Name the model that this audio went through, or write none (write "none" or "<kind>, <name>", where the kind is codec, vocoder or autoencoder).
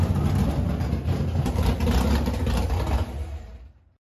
none